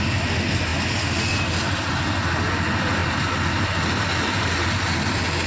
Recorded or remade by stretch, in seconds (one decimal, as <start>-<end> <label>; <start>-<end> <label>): 0.0-5.5 recorded